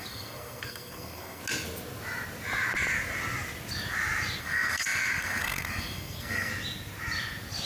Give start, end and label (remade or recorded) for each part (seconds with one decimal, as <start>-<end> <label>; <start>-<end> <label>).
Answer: 0.0-1.4 remade; 1.4-4.4 recorded; 4.4-6.5 remade; 6.5-7.7 recorded